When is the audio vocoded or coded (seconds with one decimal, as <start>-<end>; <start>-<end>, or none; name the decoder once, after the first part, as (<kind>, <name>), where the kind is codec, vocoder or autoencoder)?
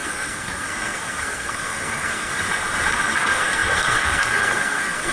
0.0-2.3 (codec, SNAC); 2.9-5.1